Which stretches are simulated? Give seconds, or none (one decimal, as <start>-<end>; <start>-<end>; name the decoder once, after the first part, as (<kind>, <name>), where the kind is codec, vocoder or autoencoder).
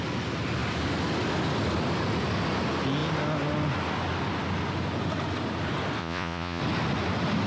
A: 6.0-6.6 (vocoder, Vocos)